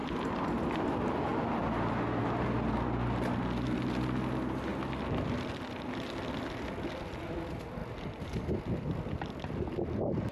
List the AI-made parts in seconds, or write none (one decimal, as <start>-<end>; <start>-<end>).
none